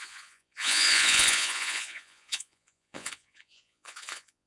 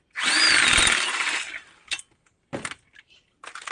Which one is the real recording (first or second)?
second